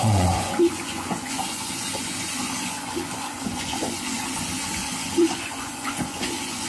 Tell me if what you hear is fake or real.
fake